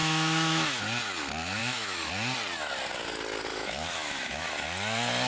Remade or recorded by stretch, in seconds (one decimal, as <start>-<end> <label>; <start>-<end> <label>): 0.0-0.8 remade; 0.8-1.6 recorded; 1.6-2.1 remade; 2.1-3.5 recorded; 3.5-4.5 remade; 4.5-5.3 recorded